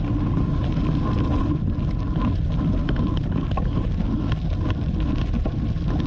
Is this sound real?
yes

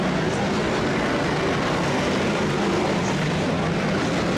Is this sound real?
yes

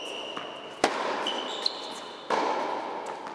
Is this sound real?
yes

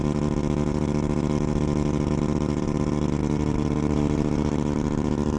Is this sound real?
no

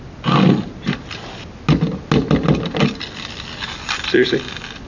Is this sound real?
yes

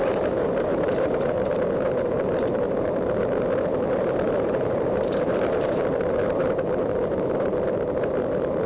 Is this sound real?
no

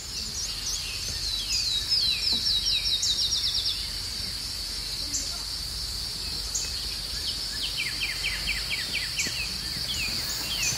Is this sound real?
yes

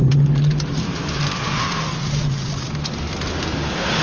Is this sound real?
no